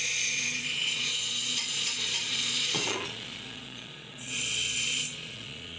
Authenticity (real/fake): fake